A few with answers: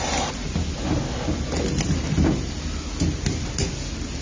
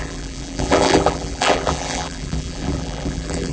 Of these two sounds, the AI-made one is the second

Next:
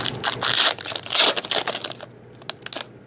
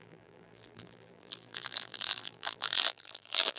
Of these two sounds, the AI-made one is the second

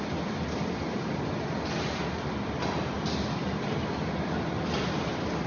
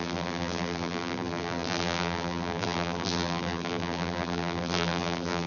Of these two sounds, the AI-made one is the second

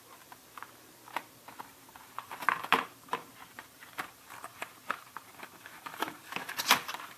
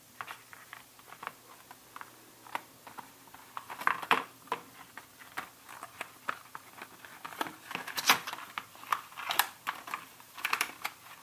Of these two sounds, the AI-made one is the first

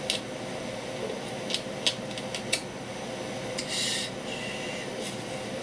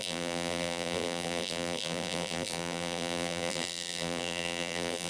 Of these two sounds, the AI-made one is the second